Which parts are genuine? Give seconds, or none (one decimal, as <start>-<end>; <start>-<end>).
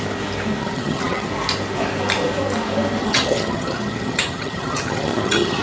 0.0-0.6; 1.3-3.0